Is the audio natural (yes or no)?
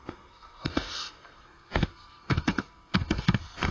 no